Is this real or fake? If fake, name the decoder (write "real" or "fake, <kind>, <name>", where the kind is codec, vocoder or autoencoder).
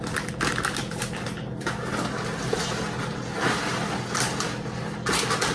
real